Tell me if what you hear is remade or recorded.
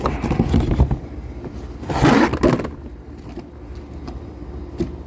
recorded